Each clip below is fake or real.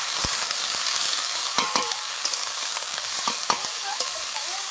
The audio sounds fake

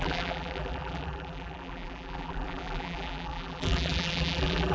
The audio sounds fake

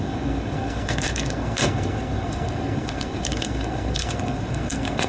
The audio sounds fake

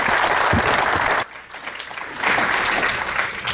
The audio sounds real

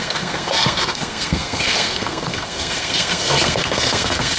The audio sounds fake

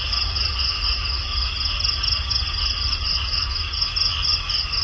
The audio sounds real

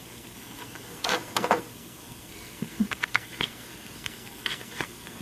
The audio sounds fake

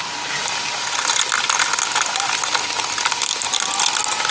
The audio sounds real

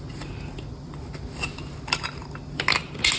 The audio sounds real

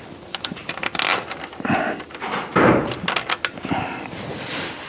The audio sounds real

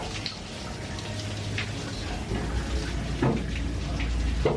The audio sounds real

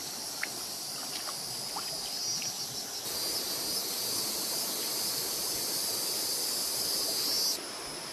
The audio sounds real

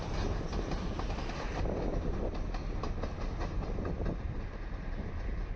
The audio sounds real